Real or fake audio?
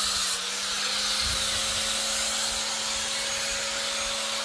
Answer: real